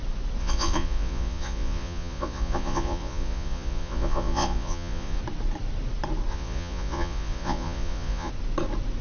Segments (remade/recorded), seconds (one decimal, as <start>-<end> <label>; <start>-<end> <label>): 0.0-0.4 recorded; 0.4-5.2 remade; 5.2-6.3 recorded; 6.3-8.3 remade; 8.3-9.0 recorded